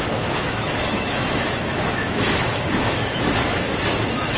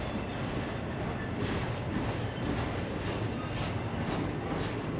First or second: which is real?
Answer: second